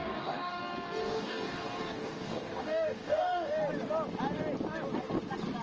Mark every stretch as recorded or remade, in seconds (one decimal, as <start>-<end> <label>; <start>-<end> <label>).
0.0-0.6 remade; 0.6-1.0 recorded; 1.0-3.6 remade; 3.6-5.6 recorded